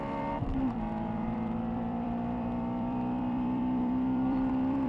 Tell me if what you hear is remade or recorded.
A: remade